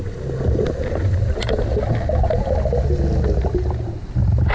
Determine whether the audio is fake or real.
real